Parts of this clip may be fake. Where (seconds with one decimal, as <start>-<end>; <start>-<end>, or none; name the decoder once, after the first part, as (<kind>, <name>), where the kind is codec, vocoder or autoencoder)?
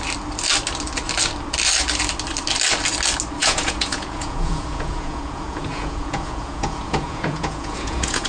3.4-8.3 (vocoder, Vocos)